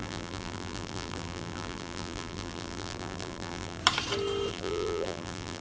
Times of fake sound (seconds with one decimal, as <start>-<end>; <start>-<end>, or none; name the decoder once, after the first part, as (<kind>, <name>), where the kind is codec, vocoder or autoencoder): 0.0-3.8 (vocoder, BigVGAN v2); 4.5-5.6